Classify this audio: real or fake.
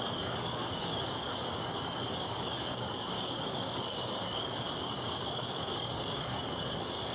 fake